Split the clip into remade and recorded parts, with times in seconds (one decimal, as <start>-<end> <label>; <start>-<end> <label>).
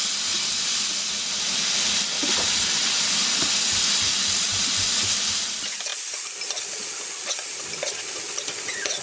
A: 0.0-5.9 recorded; 5.9-6.8 remade; 6.8-7.5 recorded; 7.5-9.0 remade